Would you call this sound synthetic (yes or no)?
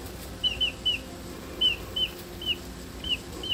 no